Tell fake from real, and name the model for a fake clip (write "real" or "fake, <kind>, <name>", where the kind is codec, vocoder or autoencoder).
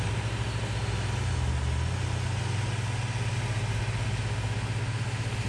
real